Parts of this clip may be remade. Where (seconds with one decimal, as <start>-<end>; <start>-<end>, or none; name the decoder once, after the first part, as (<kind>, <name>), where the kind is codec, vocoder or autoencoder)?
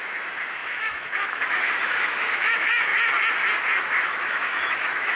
0.0-2.9 (autoencoder, DAC-VAE); 3.8-5.1